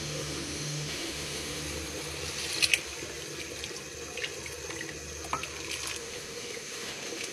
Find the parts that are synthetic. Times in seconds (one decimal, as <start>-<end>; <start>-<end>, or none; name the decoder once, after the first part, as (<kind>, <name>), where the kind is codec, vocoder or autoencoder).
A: 0.0-1.6 (autoencoder, DAC-VAE); 6.0-7.3